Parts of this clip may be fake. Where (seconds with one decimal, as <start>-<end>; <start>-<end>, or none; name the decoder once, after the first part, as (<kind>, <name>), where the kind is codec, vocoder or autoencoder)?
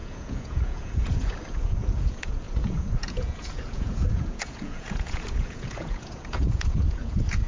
0.0-7.5 (vocoder, Vocos)